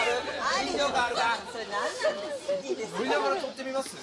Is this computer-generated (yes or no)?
no